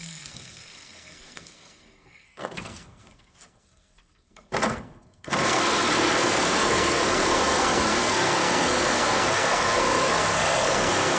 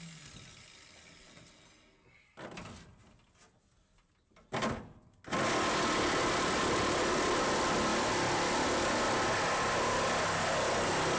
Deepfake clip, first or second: first